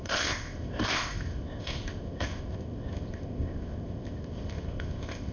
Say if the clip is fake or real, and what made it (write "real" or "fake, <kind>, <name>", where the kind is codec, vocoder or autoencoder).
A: fake, codec, ZipCodec